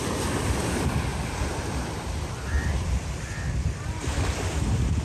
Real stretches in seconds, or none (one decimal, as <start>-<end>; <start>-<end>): 0.0-5.0